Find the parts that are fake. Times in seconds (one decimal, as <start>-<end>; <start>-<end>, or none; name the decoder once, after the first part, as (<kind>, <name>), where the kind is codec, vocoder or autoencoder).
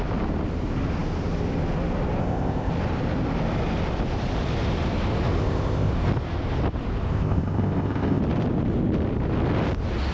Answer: 2.2-2.7 (codec, ZipCodec); 5.4-5.9; 7.1-8.2